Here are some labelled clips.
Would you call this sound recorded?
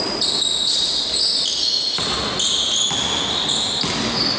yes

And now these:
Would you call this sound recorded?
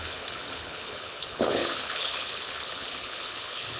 no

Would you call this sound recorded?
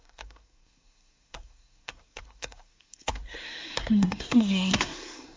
no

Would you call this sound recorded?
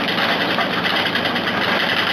yes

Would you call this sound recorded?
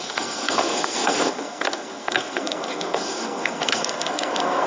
no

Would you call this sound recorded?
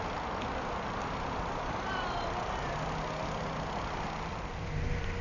yes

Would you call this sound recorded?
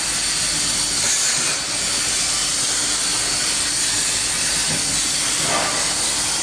yes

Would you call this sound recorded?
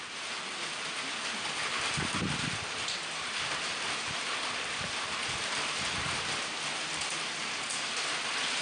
yes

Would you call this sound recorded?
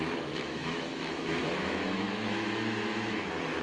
no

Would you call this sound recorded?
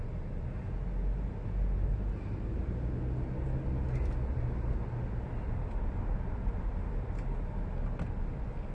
yes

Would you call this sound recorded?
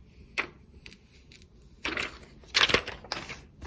yes